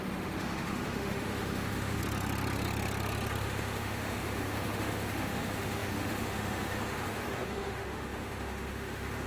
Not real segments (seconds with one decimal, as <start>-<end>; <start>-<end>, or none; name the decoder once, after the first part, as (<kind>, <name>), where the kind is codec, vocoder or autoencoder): 0.0-2.0 (autoencoder, DAC-VAE); 3.4-9.3